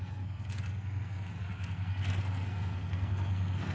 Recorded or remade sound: remade